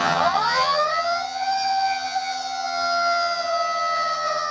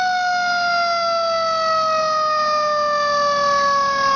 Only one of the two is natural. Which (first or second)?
second